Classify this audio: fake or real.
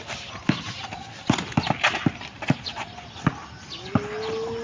real